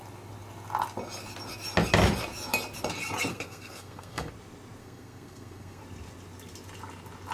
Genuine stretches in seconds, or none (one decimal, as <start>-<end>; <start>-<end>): 0.0-3.3; 4.3-4.8; 5.8-7.3